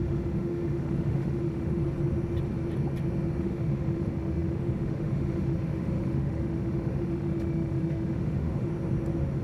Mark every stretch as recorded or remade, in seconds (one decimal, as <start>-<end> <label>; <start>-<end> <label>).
0.0-1.8 remade; 1.8-3.4 recorded; 3.4-8.7 remade; 8.7-9.4 recorded